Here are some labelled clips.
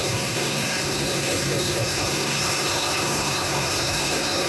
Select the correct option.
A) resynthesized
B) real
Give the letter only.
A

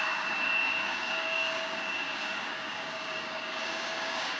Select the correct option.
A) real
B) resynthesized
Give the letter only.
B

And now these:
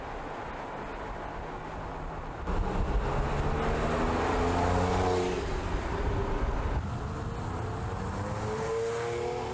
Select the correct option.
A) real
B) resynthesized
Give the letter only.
A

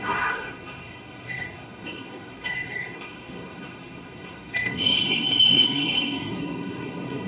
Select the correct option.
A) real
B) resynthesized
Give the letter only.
B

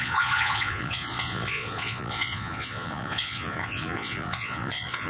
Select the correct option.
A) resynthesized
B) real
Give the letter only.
A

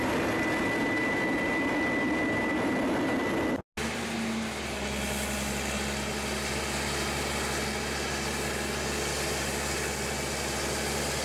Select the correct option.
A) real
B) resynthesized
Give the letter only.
A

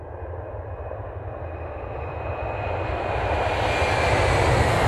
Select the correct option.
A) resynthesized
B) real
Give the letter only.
A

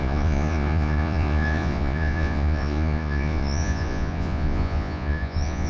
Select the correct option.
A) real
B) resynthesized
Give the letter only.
B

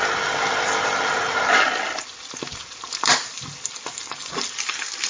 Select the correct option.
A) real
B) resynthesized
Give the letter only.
A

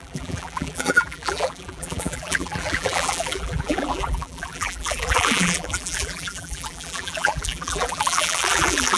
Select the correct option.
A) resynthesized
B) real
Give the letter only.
A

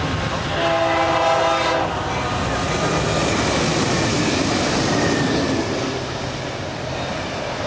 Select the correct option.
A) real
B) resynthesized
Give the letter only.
A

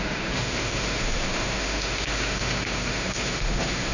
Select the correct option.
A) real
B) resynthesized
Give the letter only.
B